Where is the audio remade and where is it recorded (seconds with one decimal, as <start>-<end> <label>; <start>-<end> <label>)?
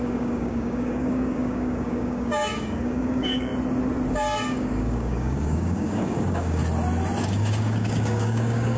0.0-3.5 remade; 3.5-4.1 recorded; 4.1-6.6 remade; 6.6-7.2 recorded; 7.2-8.8 remade